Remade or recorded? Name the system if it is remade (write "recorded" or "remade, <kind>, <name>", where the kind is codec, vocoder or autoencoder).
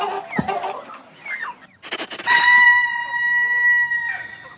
recorded